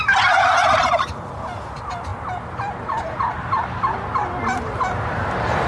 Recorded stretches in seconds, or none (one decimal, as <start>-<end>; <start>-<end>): 0.0-0.8; 1.3-5.7